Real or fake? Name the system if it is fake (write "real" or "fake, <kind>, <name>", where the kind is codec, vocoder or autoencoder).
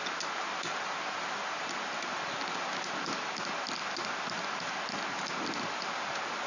real